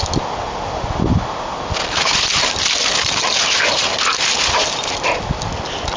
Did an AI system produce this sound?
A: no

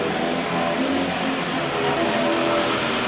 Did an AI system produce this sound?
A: no